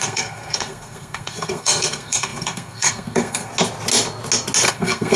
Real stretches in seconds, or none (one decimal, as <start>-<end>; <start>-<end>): 3.5-4.7